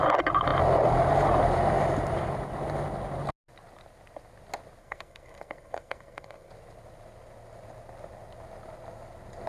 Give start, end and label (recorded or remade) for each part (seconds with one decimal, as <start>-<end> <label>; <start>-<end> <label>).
0.0-4.8 recorded; 4.8-6.5 remade; 6.5-9.5 recorded